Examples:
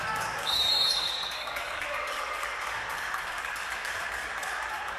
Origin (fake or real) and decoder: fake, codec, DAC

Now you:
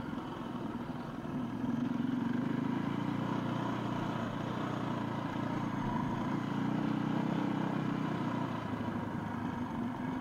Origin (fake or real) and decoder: real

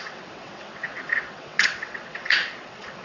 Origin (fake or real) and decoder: fake, vocoder, WaveNeXt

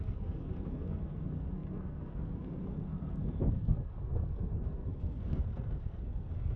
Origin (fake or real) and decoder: fake, codec, SNAC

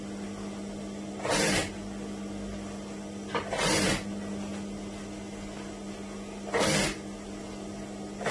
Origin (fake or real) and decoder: real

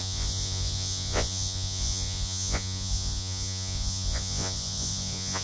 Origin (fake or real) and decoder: fake, vocoder, Vocos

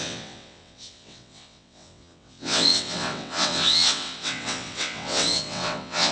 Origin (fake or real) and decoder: fake, vocoder, WaveNeXt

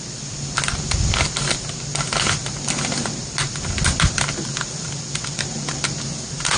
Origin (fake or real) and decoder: real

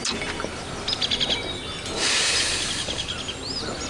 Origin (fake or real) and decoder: real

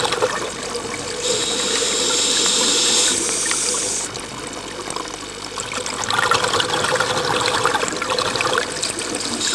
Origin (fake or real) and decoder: real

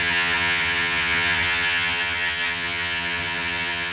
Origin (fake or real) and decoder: fake, vocoder, HiFi-GAN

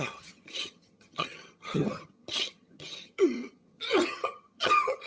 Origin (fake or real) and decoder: fake, vocoder, HiFi-GAN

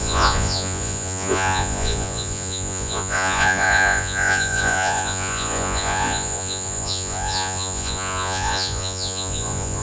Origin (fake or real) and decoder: fake, vocoder, Vocos